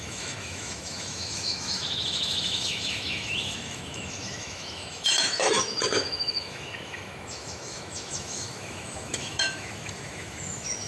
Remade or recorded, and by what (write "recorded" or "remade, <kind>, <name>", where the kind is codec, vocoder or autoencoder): remade, autoencoder, DAC-VAE